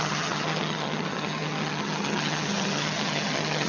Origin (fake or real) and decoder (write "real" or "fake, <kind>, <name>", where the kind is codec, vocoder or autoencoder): fake, vocoder, HiFi-GAN